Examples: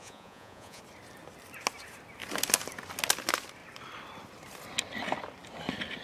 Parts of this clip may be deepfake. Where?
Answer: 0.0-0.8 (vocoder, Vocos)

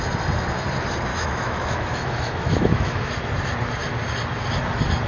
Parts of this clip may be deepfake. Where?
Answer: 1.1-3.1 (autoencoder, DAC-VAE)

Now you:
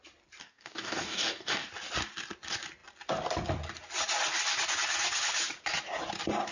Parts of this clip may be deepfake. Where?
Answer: 0.4-1.7 (codec, DAC)